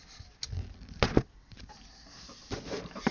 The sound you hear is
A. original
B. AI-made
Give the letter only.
A